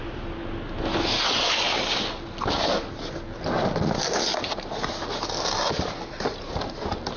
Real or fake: real